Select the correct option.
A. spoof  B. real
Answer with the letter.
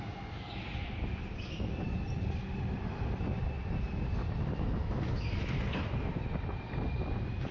B